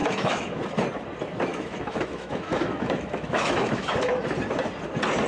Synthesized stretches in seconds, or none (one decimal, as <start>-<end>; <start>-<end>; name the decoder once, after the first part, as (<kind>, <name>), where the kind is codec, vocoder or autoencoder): 0.0-0.6 (autoencoder, DAC-VAE); 1.5-4.2

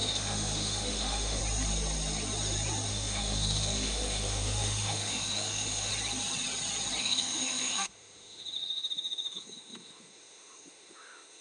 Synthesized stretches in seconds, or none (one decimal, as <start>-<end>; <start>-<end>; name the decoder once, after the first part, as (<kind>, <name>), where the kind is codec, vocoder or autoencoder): 0.0-1.4 (autoencoder, DAC-VAE); 2.9-5.9; 7.0-11.4

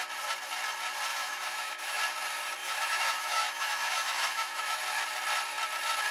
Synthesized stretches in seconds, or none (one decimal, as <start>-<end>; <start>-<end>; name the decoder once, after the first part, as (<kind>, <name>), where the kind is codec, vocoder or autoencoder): 1.1-2.0 (autoencoder, DAC-VAE); 2.6-4.8

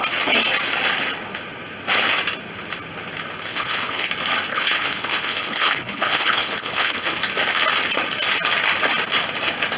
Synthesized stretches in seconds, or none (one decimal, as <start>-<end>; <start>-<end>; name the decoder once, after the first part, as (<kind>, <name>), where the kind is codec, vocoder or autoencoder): 3.5-4.1 (codec, HILCodec); 4.5-7.2

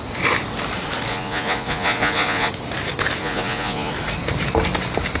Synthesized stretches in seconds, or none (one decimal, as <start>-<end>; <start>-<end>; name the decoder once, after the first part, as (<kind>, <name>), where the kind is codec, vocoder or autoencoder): 1.1-2.5 (vocoder, Vocos); 3.2-3.9

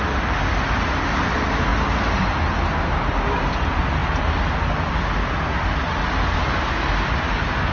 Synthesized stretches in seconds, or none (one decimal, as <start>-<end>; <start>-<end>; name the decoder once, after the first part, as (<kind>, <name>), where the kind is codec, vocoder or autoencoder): none

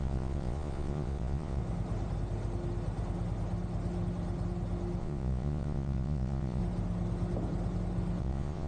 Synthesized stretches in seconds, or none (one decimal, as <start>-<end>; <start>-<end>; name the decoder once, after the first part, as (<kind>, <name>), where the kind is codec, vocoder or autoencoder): 0.0-1.6 (vocoder, Vocos); 5.0-6.6; 8.2-8.7